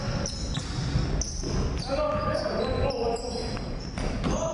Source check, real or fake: real